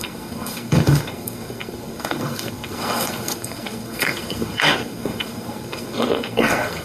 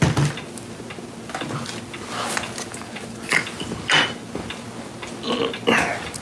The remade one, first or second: first